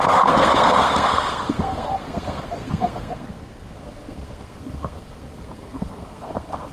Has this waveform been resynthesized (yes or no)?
yes